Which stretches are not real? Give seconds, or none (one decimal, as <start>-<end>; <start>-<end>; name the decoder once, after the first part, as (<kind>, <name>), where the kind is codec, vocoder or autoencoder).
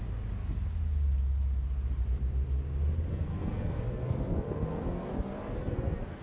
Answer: 3.1-5.1 (codec, SNAC); 5.6-6.2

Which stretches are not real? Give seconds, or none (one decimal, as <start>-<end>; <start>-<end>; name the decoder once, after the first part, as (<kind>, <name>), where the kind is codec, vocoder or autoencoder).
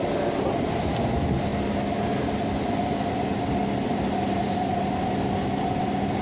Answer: none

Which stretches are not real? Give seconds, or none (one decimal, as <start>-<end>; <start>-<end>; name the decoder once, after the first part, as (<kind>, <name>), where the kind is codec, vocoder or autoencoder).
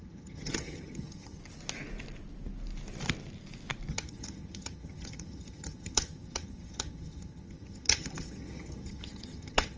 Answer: 0.0-1.4 (vocoder, HiFi-GAN); 3.9-9.8